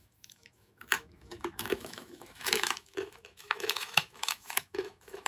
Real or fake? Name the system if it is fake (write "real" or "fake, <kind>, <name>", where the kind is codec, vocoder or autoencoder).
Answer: fake, autoencoder, DAC-VAE